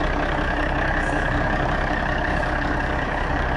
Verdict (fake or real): fake